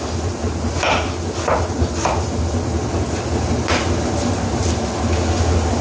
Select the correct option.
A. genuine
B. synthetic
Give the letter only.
A